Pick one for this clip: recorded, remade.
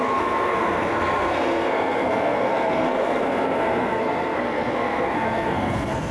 remade